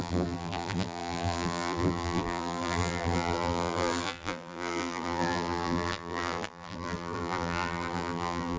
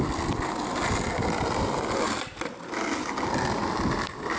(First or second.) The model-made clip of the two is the first